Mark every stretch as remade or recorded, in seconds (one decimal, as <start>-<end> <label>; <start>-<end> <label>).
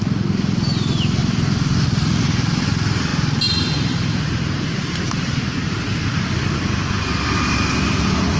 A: 0.0-1.2 recorded; 1.2-1.8 remade; 1.8-3.1 recorded; 3.1-6.7 remade; 6.7-8.4 recorded